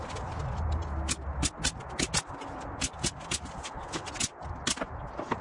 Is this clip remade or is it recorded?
recorded